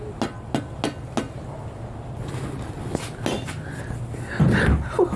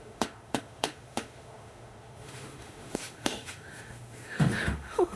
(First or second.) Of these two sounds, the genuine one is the first